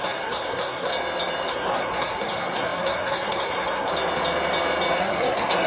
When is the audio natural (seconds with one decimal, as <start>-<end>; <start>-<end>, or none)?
0.9-1.5; 3.9-5.0